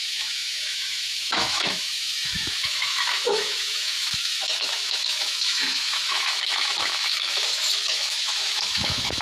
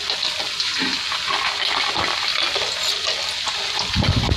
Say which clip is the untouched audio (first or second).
second